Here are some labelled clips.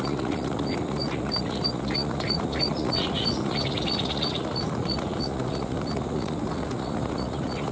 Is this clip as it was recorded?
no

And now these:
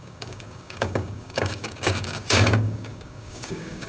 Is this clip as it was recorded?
no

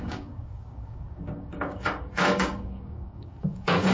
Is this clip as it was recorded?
no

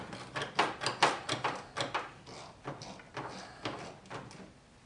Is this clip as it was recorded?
yes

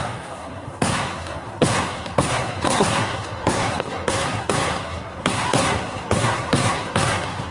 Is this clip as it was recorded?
no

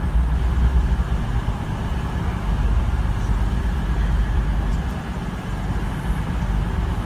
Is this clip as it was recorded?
yes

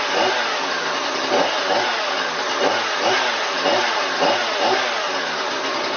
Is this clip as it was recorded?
yes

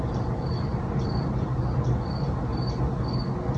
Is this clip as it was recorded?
yes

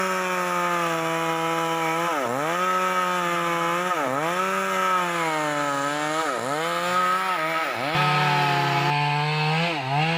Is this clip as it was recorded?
yes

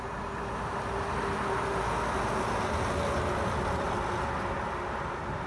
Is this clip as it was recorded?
yes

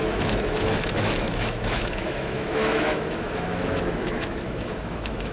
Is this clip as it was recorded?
no